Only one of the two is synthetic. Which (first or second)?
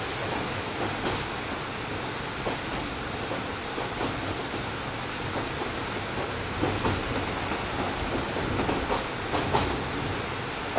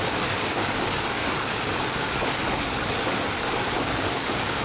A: second